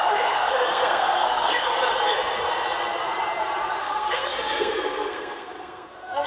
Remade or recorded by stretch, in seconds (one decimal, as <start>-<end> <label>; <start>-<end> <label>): 0.0-1.7 remade; 1.7-3.8 recorded; 3.8-6.3 remade